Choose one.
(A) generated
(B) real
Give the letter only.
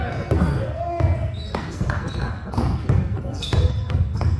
A